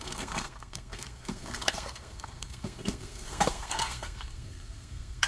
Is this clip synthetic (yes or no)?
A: yes